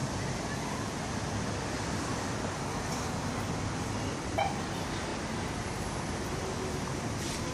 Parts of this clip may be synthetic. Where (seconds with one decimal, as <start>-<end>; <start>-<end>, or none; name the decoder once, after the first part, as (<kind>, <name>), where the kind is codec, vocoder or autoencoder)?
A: none